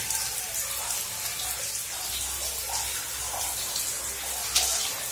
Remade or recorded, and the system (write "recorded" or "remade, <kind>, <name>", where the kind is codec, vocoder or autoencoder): recorded